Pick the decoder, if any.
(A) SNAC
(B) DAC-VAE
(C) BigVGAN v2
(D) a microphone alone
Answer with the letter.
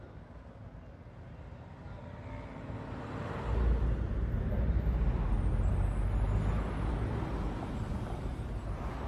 D